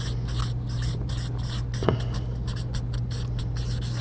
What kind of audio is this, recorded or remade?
recorded